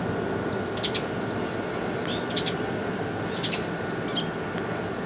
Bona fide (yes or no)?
yes